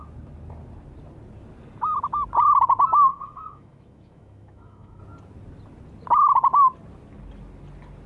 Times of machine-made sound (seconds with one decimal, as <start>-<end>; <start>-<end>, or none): 3.1-5.0